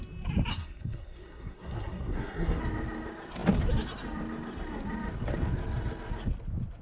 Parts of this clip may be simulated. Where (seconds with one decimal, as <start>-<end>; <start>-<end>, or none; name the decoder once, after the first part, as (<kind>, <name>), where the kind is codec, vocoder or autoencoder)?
0.5-2.6 (codec, SNAC)